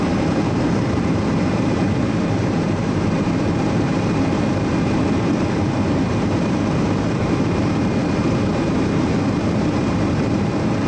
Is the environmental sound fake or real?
fake